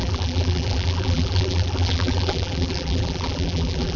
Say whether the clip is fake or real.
fake